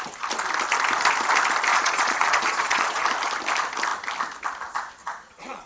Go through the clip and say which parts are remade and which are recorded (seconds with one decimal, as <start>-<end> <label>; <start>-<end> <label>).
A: 0.0-1.7 recorded; 1.7-3.0 remade; 3.0-5.0 recorded; 5.0-5.7 remade